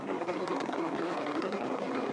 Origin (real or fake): fake